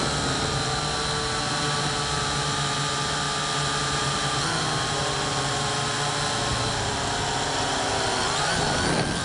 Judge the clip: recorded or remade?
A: recorded